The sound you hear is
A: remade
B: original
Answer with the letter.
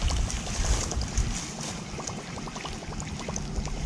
B